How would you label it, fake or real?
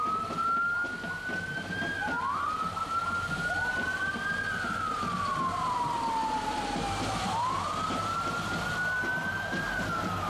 real